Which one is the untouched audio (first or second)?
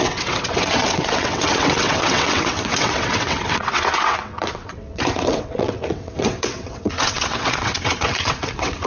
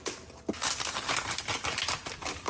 second